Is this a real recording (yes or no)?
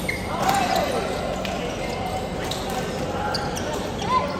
no